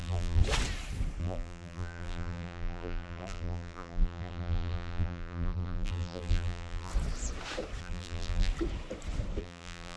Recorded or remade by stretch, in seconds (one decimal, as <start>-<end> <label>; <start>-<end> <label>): 0.0-0.4 remade; 0.4-1.2 recorded; 1.2-6.9 remade; 6.9-7.8 recorded; 7.8-8.5 remade; 8.5-9.4 recorded; 9.4-10.0 remade